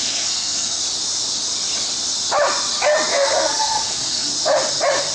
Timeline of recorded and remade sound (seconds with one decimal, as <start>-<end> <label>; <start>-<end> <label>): 0.0-0.8 remade; 0.8-3.1 recorded; 3.1-4.3 remade; 4.3-5.1 recorded